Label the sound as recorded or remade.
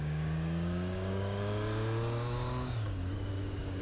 remade